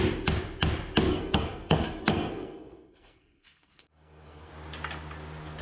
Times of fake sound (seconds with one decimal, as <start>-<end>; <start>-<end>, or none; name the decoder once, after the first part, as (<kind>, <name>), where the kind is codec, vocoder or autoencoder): 1.1-4.5 (codec, SNAC)